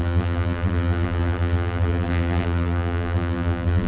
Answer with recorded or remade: remade